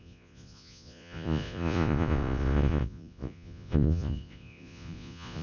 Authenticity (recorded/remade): remade